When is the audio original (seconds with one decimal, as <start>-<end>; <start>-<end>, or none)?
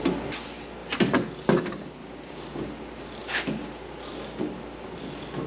0.0-2.0; 2.7-5.5